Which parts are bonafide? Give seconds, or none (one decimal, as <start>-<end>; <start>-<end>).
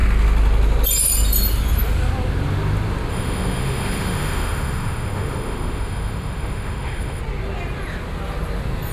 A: 0.0-3.1; 7.2-8.9